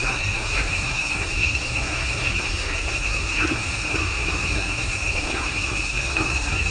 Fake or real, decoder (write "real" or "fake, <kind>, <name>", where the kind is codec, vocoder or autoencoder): fake, codec, SNAC